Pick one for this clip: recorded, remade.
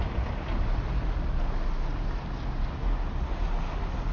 recorded